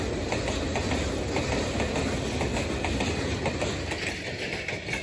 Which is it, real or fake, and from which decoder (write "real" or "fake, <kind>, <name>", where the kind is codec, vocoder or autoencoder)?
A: real